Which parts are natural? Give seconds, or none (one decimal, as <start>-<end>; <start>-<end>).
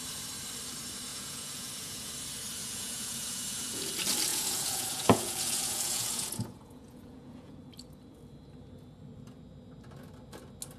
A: 0.0-1.1; 2.1-2.6; 3.9-4.3; 7.6-10.8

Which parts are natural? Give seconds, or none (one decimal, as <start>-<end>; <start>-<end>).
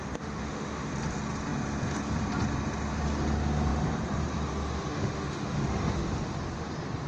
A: 0.9-4.9; 5.7-7.1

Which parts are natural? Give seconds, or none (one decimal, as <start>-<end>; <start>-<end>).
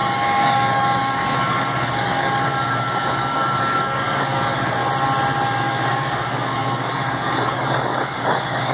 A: 4.8-5.6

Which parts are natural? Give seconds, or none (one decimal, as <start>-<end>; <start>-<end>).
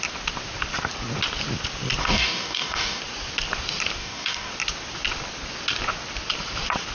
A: 0.0-2.0; 3.0-4.0; 4.5-6.9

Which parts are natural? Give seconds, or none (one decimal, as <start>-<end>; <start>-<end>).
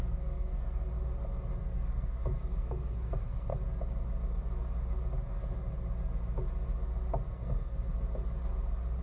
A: 0.9-1.6; 3.5-7.3; 7.9-9.0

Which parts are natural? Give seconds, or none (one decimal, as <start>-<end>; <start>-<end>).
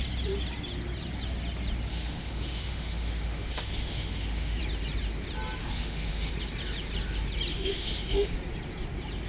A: 0.0-1.9; 4.6-5.6; 6.3-7.5; 8.3-9.3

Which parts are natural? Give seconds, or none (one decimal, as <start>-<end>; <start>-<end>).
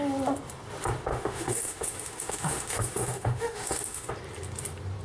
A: 0.0-1.1; 4.1-5.0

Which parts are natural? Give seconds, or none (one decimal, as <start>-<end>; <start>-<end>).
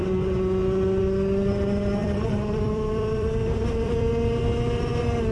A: 0.0-2.0; 4.1-5.3